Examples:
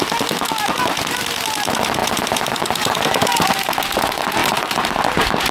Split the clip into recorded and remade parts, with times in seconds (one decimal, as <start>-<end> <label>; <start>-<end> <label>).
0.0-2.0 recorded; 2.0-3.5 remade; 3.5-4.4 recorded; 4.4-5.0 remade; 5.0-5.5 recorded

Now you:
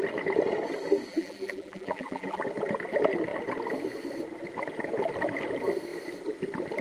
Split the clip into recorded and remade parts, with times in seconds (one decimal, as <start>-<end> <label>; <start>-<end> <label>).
0.0-1.1 recorded; 1.1-2.4 remade; 2.4-6.8 recorded

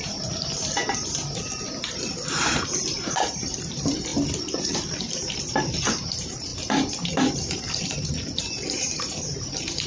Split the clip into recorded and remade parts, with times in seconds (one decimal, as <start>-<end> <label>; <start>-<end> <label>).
0.0-4.1 remade; 4.1-5.0 recorded; 5.0-9.9 remade

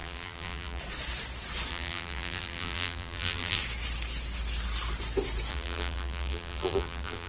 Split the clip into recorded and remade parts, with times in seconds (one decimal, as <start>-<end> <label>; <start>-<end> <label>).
0.0-0.8 remade; 0.8-1.7 recorded; 1.7-3.6 remade; 3.6-5.5 recorded; 5.5-7.3 remade

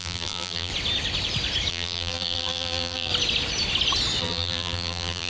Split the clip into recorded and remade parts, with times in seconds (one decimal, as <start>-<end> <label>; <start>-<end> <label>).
0.0-0.7 remade; 0.7-1.7 recorded; 1.7-3.1 remade; 3.1-4.2 recorded; 4.2-5.3 remade

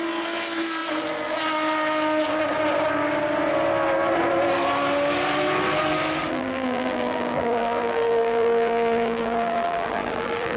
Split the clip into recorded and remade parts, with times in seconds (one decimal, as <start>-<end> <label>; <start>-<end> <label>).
0.0-6.3 recorded; 6.3-10.6 remade